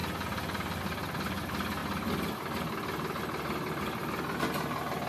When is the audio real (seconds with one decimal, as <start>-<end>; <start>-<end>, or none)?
0.0-5.1